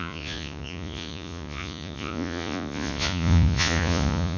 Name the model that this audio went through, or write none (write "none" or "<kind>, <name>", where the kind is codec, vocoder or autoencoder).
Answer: vocoder, Vocos